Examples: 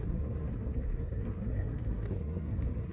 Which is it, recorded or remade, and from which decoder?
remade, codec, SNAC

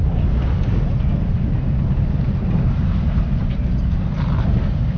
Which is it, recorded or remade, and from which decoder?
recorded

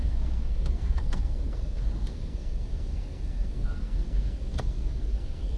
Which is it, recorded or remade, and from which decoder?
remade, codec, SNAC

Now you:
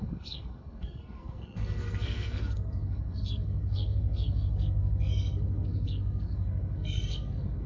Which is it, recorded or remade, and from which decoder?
remade, codec, SNAC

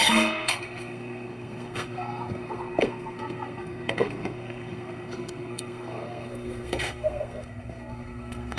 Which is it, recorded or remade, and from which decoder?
remade, codec, SNAC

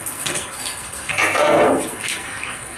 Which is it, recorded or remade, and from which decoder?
remade, codec, SNAC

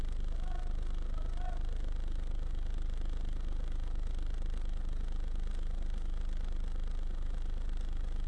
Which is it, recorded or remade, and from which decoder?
recorded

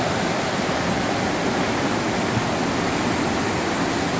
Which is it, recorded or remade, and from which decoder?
recorded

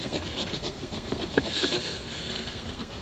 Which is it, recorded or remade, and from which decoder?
remade, codec, SNAC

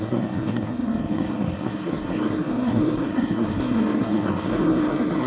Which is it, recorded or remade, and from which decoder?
remade, codec, SNAC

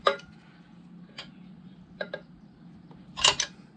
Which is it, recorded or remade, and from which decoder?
recorded